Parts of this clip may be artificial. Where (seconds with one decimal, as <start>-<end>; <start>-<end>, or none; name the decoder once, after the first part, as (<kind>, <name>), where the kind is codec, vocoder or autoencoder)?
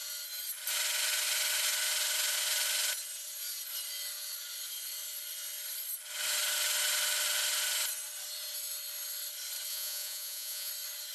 9.7-10.7 (vocoder, Vocos)